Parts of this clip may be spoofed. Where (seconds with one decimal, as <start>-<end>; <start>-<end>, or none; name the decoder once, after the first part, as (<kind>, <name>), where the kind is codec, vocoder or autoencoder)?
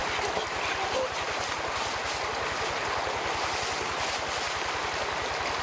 none